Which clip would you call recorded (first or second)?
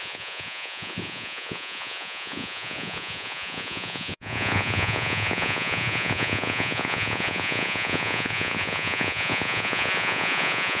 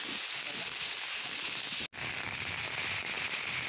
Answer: second